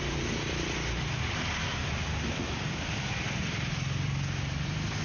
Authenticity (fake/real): fake